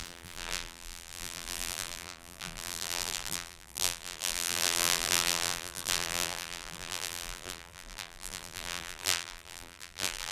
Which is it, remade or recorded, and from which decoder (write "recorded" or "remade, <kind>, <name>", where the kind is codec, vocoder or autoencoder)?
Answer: remade, vocoder, BigVGAN v2